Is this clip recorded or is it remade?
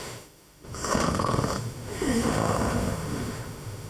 remade